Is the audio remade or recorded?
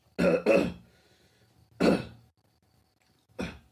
recorded